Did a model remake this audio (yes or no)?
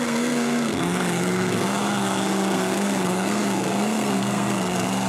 yes